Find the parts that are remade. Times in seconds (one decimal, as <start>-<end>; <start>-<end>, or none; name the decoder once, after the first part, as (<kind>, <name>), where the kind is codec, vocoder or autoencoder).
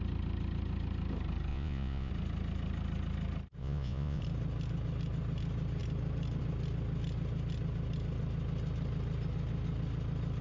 1.5-2.1 (vocoder, Vocos); 3.6-4.2